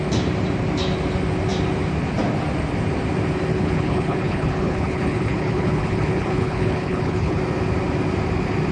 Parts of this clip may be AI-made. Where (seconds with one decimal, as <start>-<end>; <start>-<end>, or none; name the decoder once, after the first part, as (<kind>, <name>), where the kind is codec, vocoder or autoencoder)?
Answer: 3.5-7.4 (codec, HILCodec)